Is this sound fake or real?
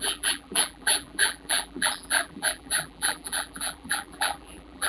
fake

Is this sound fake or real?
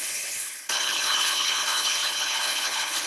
fake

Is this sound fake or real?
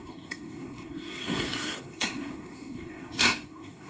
fake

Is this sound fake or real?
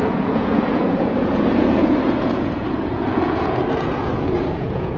fake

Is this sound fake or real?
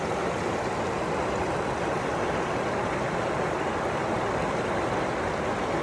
real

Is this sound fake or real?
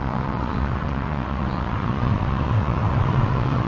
fake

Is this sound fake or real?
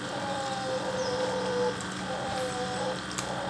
real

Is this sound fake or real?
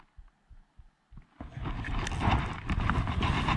real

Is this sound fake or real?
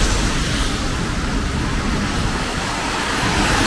real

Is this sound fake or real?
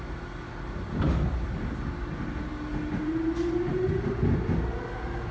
real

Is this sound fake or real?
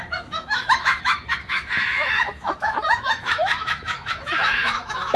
fake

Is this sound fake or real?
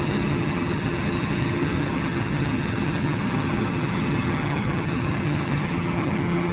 fake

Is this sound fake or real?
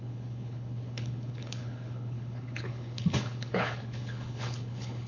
fake